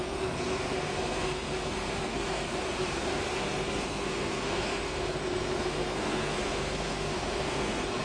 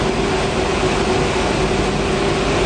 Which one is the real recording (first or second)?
second